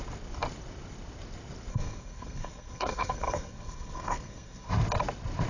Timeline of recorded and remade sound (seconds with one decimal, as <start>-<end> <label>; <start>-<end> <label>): 0.0-1.7 recorded; 1.7-4.7 remade; 4.7-5.5 recorded